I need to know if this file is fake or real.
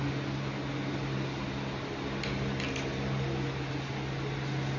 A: real